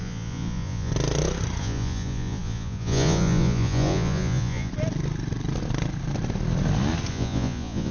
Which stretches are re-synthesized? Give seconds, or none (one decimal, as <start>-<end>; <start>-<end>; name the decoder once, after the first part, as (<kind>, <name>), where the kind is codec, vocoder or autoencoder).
0.0-0.9 (vocoder, Vocos); 1.6-4.7; 7.1-7.9